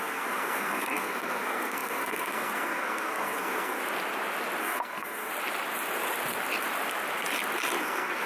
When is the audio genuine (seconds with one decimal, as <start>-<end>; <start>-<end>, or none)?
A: 3.8-4.6; 5.3-7.8